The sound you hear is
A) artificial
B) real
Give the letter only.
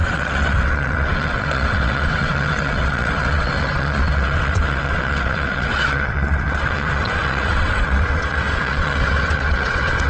A